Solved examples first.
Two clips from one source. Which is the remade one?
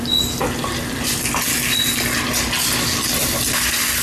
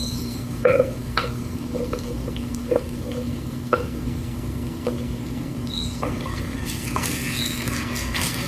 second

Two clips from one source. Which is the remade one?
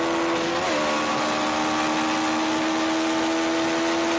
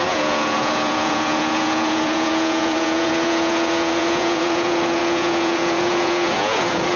second